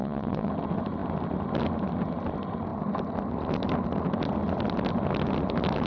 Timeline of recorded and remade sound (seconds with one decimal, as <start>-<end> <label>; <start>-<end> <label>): 0.0-0.5 remade; 0.5-5.9 recorded